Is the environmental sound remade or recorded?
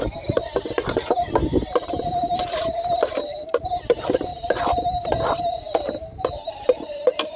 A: remade